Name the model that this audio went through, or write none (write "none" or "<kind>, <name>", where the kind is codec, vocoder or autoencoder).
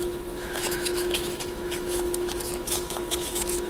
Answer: autoencoder, DAC-VAE